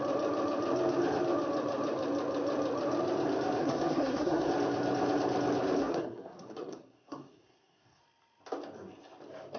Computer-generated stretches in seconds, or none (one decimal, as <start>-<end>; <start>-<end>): 3.6-4.5; 5.8-8.0